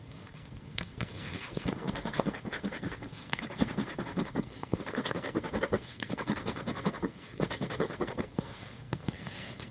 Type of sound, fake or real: fake